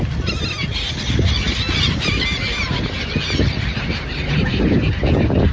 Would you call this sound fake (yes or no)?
no